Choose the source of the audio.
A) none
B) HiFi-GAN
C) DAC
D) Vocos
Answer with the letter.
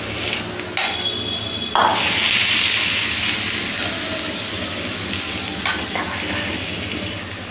A